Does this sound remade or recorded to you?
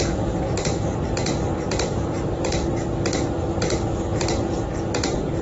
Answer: recorded